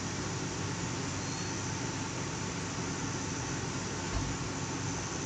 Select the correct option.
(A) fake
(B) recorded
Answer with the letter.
B